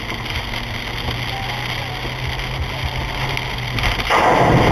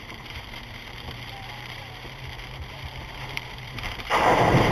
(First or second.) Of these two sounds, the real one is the first